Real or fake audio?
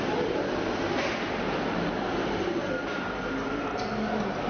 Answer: real